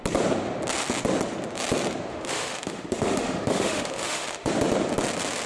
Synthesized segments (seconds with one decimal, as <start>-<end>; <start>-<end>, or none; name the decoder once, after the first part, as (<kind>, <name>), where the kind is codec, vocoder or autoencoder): 2.1-4.5 (autoencoder, DAC-VAE)